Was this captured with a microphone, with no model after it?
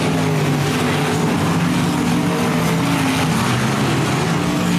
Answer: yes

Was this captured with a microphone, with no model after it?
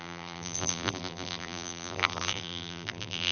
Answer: no